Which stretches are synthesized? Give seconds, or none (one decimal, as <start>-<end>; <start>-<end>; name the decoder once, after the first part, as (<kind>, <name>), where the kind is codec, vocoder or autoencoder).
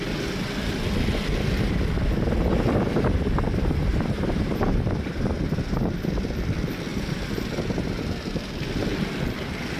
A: 3.9-4.5 (vocoder, BigVGAN v2); 6.9-8.3